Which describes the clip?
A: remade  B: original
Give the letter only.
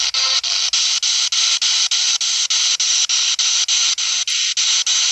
B